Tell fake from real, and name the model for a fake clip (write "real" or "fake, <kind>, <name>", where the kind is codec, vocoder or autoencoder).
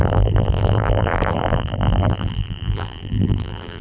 fake, vocoder, BigVGAN v2